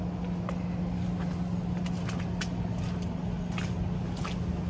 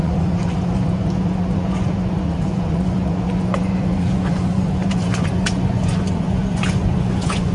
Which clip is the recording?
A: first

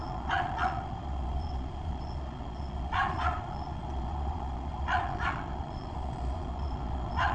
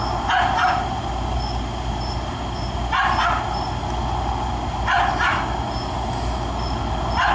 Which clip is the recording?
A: second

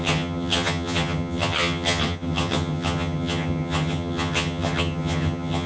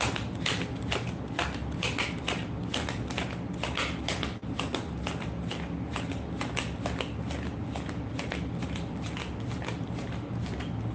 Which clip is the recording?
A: second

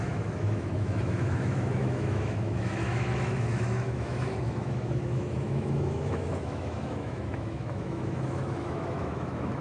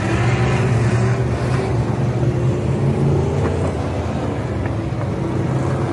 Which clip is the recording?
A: second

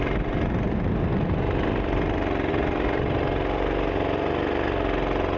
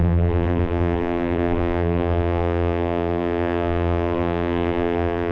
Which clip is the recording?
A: first